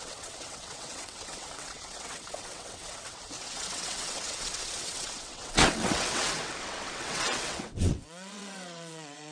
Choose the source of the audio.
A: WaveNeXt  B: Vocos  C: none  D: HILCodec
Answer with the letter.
A